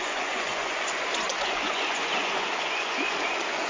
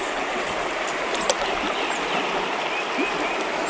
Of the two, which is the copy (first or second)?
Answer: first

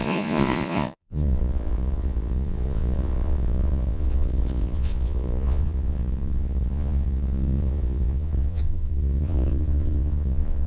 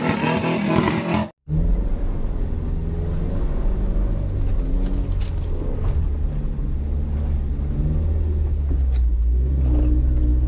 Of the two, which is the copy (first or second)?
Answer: first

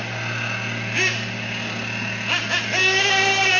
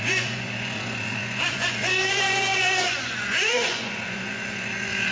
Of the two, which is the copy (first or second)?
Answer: second